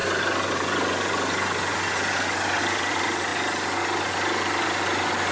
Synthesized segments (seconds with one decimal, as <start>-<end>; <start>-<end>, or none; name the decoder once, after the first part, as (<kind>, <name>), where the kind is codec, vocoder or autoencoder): 2.6-3.3 (vocoder, BigVGAN v2)